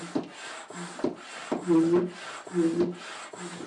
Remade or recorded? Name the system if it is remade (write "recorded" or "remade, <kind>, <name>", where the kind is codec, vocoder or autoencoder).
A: recorded